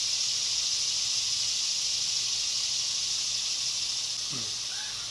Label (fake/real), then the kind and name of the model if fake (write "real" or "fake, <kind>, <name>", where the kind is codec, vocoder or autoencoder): real